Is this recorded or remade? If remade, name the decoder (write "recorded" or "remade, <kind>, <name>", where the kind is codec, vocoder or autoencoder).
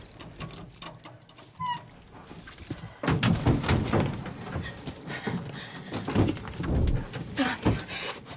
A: recorded